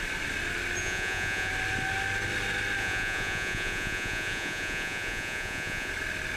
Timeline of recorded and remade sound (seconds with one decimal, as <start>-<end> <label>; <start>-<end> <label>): 0.0-0.8 recorded; 0.8-1.5 remade; 1.5-2.8 recorded; 2.8-5.9 remade; 5.9-6.4 recorded